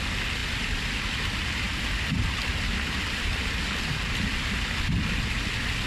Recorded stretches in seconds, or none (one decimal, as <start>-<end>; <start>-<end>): 0.0-5.9